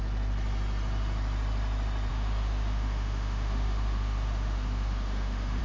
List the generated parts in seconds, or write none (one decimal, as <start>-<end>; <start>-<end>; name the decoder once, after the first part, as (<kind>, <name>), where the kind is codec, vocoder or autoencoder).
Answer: 2.1-5.6 (autoencoder, DAC-VAE)